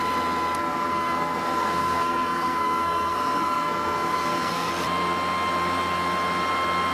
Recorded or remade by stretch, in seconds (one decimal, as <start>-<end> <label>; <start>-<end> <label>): 0.0-0.6 recorded; 0.6-4.7 remade; 4.7-6.9 recorded